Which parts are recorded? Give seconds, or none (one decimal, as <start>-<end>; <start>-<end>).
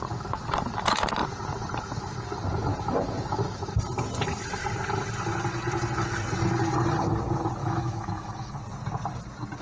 0.0-7.6; 8.5-9.6